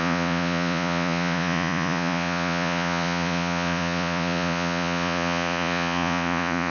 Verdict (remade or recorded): remade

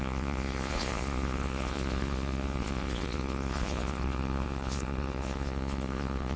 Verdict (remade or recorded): remade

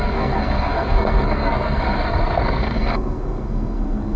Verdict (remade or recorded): remade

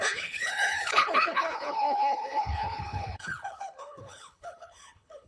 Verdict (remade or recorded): remade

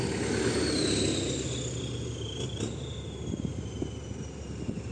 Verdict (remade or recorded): recorded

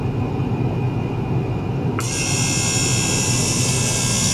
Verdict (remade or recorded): recorded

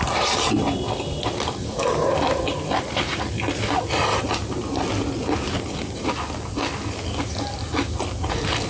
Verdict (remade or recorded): recorded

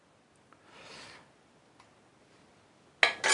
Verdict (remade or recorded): recorded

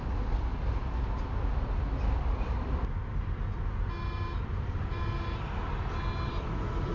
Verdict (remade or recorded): recorded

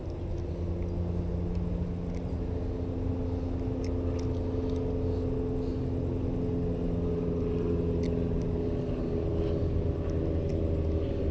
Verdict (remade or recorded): recorded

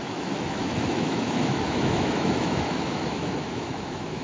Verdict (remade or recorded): remade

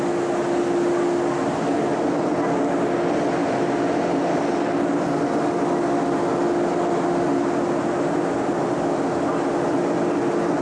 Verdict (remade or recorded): recorded